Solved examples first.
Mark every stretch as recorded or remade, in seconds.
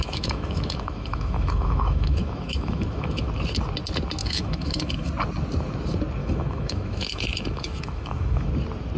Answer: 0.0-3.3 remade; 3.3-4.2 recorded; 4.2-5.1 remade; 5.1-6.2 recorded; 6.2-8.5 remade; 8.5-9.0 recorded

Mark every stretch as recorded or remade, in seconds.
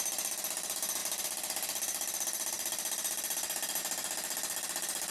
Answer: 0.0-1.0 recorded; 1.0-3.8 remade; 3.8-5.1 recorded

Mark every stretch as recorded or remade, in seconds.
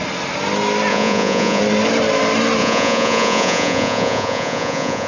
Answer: 0.0-0.9 recorded; 0.9-1.6 remade; 1.6-2.6 recorded; 2.6-5.1 remade